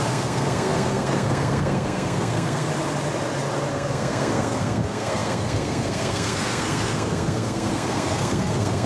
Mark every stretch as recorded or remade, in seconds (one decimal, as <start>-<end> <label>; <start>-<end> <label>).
0.0-2.7 remade; 2.7-3.7 recorded; 3.7-8.9 remade